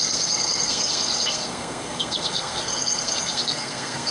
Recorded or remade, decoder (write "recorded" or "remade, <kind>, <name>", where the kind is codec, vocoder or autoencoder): remade, codec, SNAC